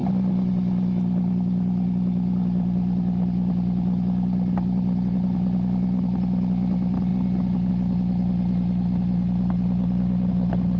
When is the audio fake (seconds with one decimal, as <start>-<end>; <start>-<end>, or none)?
none